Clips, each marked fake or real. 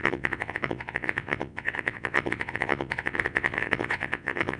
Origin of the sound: fake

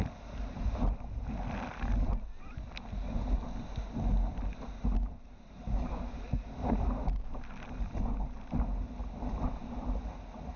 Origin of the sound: real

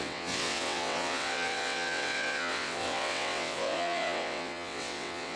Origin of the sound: fake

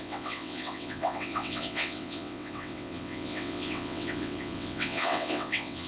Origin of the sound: fake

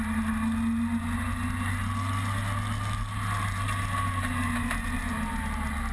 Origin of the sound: real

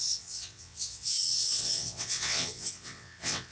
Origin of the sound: fake